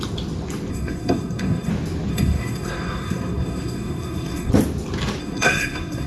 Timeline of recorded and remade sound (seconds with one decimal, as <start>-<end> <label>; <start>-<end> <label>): 0.0-0.7 recorded; 0.7-1.7 remade; 1.7-2.1 recorded; 2.1-4.5 remade; 4.5-5.2 recorded; 5.2-6.1 remade